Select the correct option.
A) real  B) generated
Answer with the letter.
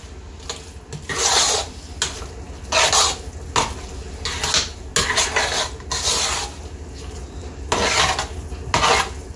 A